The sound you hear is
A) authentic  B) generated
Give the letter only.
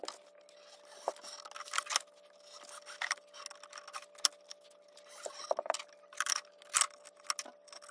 A